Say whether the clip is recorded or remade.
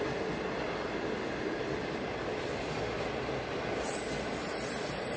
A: recorded